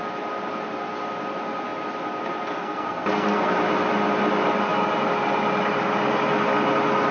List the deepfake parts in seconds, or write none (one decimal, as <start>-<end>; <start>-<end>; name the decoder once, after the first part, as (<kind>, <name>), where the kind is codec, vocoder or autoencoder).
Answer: 2.6-3.5 (codec, SNAC)